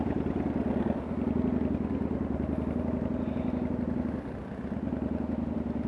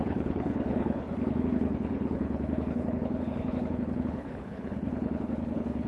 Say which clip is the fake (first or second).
second